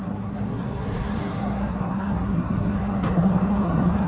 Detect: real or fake fake